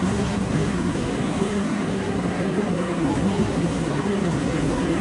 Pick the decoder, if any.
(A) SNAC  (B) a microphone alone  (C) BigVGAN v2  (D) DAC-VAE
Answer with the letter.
A